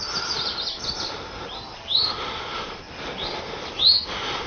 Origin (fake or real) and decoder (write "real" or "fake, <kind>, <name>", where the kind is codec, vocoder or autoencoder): real